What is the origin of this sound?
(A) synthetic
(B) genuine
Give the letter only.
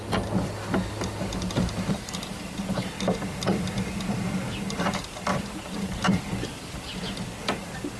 B